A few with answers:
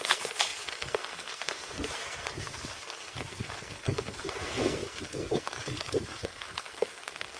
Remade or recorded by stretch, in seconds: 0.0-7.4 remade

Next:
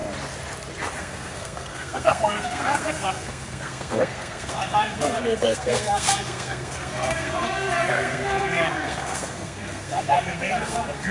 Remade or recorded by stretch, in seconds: 0.0-1.0 recorded; 1.0-11.1 remade

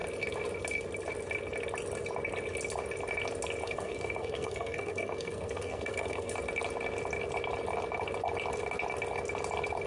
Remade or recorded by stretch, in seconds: 0.0-3.6 recorded; 3.6-6.3 remade; 6.3-9.9 recorded

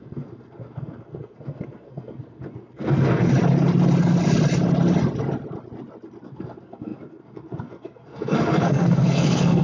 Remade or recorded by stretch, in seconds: 0.0-3.3 remade; 3.3-6.2 recorded; 6.2-9.6 remade

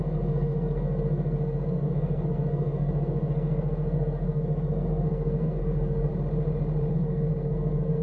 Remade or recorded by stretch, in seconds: 0.0-6.1 remade; 6.1-6.9 recorded; 6.9-8.0 remade

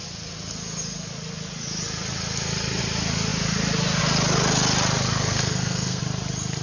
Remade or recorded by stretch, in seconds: 0.0-5.1 recorded; 5.1-6.0 remade; 6.0-6.6 recorded